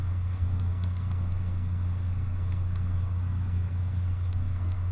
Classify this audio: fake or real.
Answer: fake